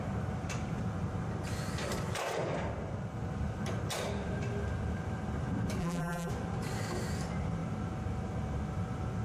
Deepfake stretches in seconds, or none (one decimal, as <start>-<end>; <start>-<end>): 5.8-6.3